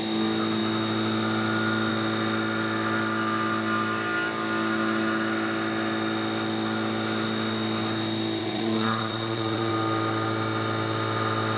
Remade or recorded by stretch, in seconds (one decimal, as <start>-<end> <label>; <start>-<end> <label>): 0.0-8.4 recorded; 8.4-9.7 remade; 9.7-11.6 recorded